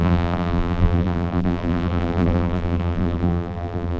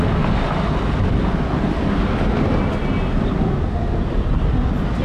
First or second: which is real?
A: second